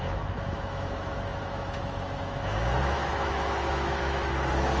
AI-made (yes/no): yes